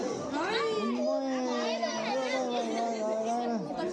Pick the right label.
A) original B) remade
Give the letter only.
A